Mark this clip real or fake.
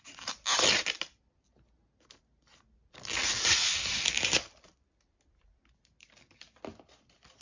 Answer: real